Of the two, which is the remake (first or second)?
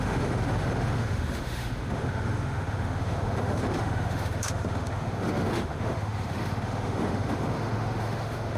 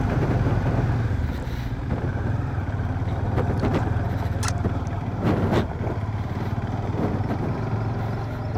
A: first